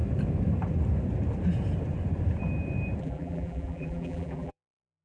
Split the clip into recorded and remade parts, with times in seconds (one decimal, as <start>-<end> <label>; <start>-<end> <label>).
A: 0.0-3.0 recorded; 3.0-5.0 remade